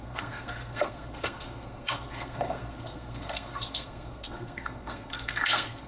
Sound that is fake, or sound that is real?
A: fake